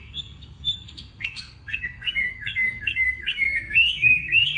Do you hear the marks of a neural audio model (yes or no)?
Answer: yes